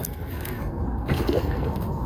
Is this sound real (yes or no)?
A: no